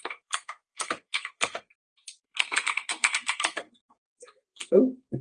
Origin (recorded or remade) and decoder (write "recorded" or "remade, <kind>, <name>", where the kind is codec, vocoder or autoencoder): remade, codec, SNAC